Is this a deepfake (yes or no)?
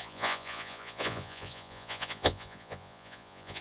yes